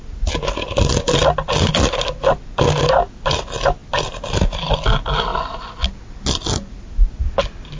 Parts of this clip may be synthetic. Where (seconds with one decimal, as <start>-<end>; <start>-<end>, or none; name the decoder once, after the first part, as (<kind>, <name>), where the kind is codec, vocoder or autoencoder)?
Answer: none